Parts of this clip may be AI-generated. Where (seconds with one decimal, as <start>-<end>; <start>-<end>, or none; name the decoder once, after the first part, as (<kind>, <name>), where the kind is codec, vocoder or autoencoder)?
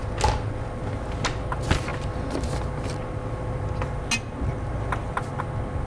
none